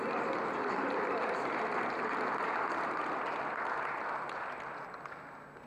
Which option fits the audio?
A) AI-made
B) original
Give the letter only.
B